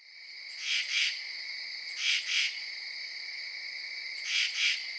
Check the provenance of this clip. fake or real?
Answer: fake